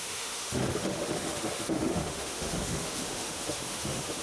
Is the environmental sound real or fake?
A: fake